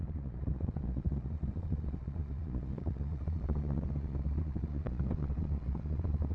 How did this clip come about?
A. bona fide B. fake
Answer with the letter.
B